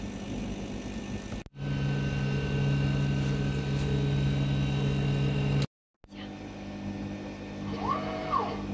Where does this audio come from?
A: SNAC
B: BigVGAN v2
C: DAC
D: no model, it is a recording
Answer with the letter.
D